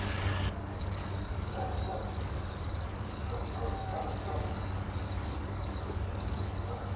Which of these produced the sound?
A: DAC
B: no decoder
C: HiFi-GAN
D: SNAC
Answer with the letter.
A